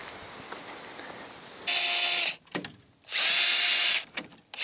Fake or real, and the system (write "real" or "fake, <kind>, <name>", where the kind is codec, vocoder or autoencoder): real